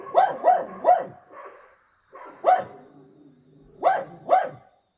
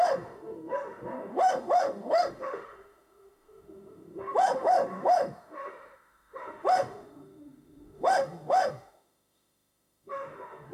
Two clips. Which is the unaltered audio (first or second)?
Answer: first